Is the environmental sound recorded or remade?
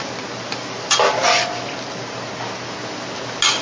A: recorded